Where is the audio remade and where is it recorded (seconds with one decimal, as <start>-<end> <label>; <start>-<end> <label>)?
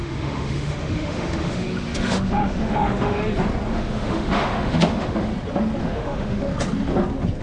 0.0-3.2 remade; 3.2-3.7 recorded; 3.7-5.3 remade; 5.3-5.8 recorded; 5.8-6.5 remade; 6.5-7.4 recorded